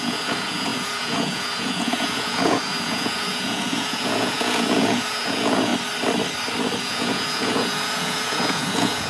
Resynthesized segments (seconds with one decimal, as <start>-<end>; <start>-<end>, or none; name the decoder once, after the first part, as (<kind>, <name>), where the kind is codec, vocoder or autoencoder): 0.0-5.7 (vocoder, Vocos); 6.8-9.1